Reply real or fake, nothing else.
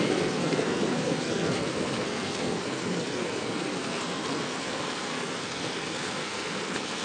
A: fake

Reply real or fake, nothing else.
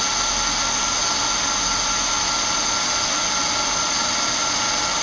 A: real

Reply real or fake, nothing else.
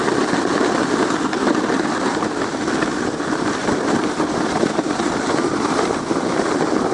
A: real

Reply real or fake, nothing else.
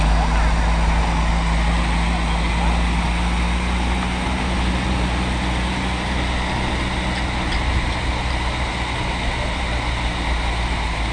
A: real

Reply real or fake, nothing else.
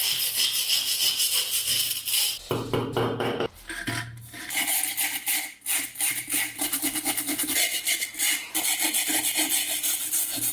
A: real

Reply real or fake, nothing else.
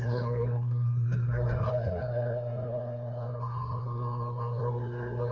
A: fake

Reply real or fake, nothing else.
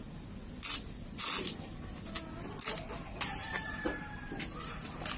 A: real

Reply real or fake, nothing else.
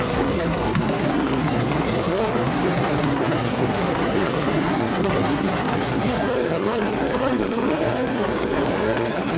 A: fake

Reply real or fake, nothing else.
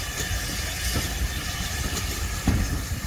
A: real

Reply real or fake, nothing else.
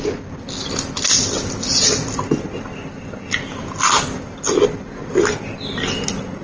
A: real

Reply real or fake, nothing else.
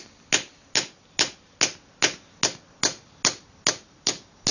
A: real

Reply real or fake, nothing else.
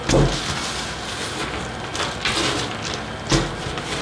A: real